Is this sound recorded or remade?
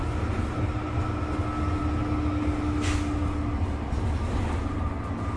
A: recorded